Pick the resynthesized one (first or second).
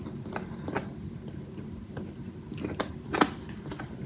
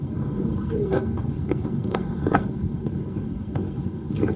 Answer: second